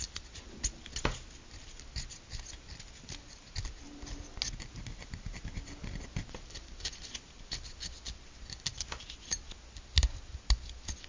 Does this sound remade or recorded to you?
recorded